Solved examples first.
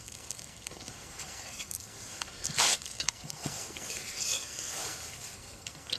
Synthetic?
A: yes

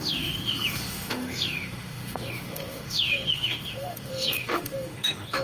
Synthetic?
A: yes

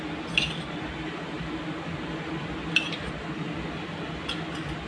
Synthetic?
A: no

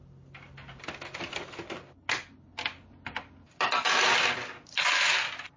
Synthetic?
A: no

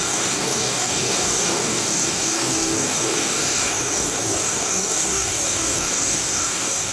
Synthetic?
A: yes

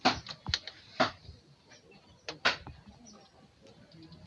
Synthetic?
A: no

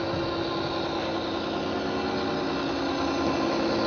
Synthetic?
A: no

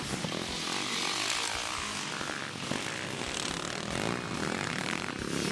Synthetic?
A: no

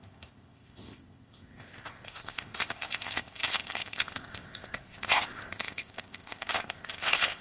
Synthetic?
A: yes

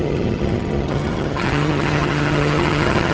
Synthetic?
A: yes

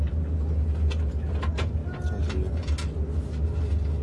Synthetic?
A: no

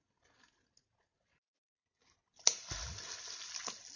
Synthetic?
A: no